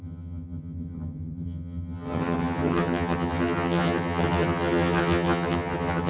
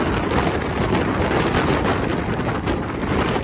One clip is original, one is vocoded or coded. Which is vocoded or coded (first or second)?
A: first